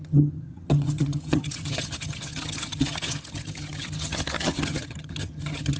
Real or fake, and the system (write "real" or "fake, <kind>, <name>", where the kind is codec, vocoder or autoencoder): fake, vocoder, HiFi-GAN